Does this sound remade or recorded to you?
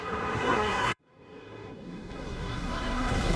remade